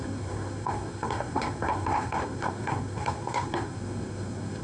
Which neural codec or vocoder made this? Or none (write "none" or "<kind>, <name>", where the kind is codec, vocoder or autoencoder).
codec, SNAC